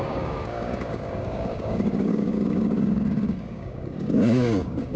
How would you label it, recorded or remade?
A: remade